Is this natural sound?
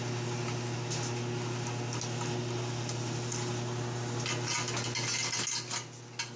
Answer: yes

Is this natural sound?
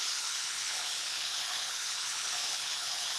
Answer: no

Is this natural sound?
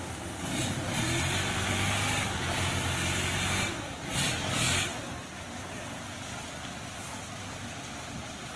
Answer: yes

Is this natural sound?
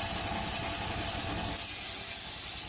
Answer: yes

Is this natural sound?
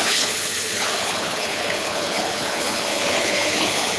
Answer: no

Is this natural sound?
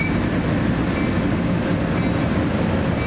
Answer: yes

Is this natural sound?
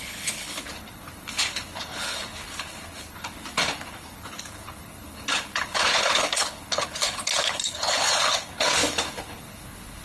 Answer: no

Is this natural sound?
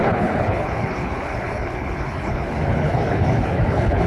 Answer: no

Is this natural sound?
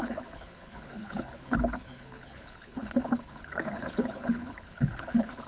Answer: no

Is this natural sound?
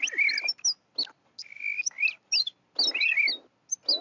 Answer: yes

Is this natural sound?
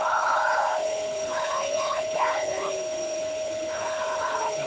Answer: no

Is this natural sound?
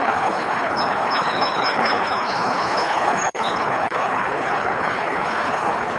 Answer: no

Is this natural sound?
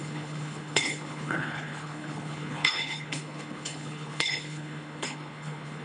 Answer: no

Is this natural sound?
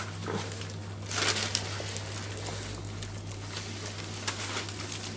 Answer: yes